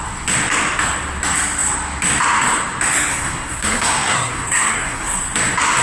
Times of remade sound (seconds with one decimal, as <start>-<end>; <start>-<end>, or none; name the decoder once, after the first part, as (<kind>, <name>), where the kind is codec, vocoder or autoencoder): 3.1-5.2 (codec, SNAC)